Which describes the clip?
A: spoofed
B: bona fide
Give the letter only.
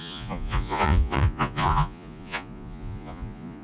A